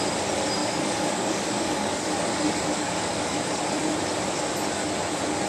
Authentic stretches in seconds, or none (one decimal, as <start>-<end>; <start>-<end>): 0.0-0.6; 3.6-5.5

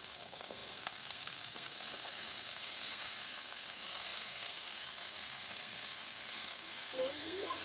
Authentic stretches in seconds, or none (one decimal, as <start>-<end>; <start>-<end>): none

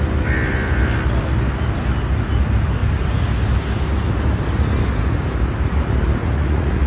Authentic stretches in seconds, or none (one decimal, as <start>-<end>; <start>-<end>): 0.0-6.2

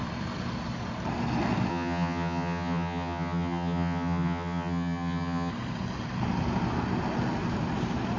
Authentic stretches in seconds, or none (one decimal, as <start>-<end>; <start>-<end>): 0.0-1.7; 5.5-8.2

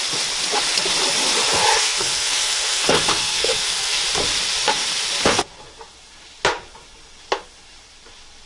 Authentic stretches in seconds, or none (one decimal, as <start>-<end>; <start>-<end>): 0.0-1.8; 4.0-8.5